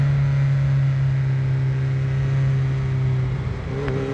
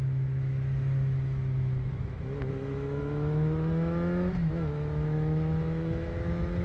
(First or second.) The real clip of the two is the first